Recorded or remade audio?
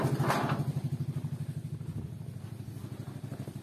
recorded